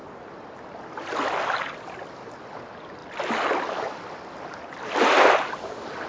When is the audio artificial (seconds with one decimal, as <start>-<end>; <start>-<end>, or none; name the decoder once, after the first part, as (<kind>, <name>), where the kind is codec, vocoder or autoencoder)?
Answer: none

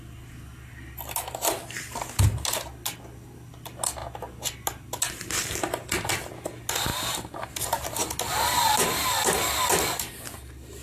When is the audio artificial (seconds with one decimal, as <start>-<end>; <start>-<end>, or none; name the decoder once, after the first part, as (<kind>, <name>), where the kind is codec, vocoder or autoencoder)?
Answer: none

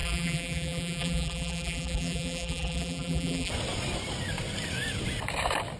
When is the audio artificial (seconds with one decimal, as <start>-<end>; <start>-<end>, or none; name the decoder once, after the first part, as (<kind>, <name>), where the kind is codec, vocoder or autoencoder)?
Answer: 0.0-3.5 (vocoder, BigVGAN v2)

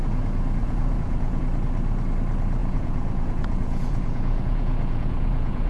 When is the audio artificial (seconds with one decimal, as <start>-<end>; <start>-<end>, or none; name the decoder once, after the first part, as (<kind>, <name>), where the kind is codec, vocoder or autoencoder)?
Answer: 0.6-1.4 (vocoder, Vocos); 2.6-5.7

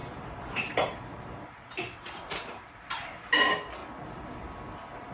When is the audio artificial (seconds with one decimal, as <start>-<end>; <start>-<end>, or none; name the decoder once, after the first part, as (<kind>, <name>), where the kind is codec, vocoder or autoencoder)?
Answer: 0.0-3.1 (vocoder, BigVGAN v2); 3.8-4.5

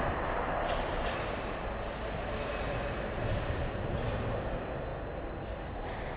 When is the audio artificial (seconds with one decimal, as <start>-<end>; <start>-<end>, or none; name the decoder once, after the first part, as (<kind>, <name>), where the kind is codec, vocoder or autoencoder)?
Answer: none